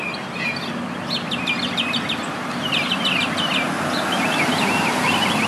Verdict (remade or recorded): recorded